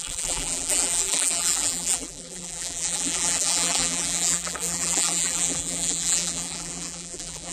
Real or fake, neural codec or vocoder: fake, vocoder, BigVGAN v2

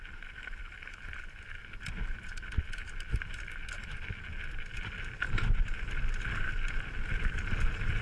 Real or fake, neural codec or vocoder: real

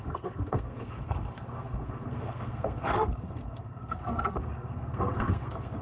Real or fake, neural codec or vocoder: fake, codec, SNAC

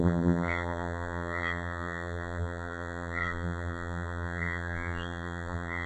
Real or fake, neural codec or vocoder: fake, vocoder, BigVGAN v2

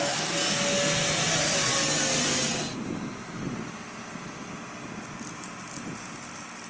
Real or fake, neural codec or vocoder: real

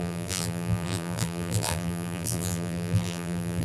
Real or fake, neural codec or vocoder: fake, vocoder, BigVGAN v2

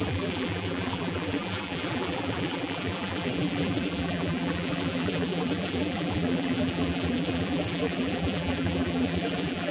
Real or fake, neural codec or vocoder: fake, vocoder, BigVGAN v2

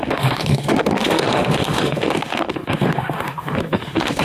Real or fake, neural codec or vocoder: fake, autoencoder, DAC-VAE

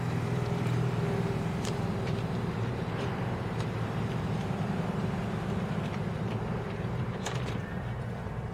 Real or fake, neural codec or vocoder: fake, vocoder, BigVGAN v2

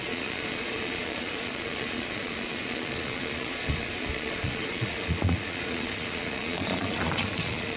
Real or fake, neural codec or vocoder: fake, vocoder, Vocos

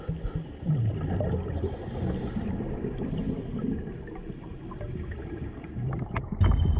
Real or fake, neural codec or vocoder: real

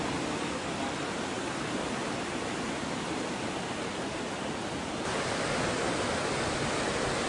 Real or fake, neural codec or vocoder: real